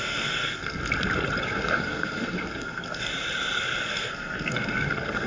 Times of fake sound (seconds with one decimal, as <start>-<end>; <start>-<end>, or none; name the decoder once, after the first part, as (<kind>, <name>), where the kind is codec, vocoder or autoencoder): 0.0-0.8 (codec, SNAC); 1.4-3.1; 3.9-5.3